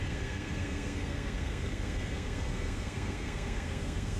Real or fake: fake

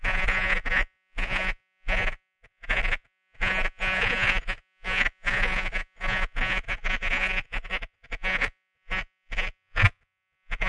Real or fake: fake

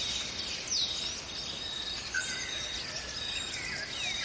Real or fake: real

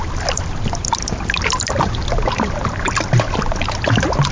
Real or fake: real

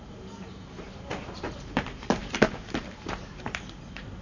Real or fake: fake